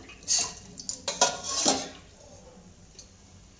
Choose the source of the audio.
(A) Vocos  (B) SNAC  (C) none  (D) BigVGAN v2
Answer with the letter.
C